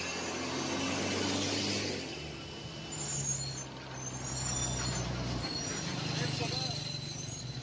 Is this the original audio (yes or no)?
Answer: yes